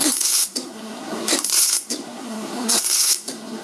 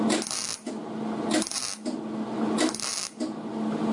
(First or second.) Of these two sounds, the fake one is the first